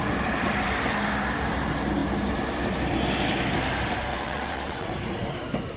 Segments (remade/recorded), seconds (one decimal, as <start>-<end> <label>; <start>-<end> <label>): 0.0-4.1 recorded; 4.1-4.9 remade; 4.9-5.8 recorded